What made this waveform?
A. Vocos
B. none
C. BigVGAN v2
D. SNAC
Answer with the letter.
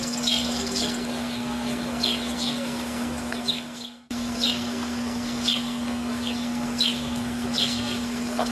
D